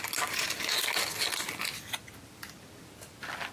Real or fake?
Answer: real